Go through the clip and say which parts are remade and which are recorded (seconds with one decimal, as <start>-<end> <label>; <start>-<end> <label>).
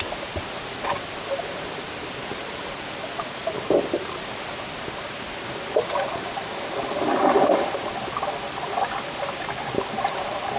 0.0-10.6 recorded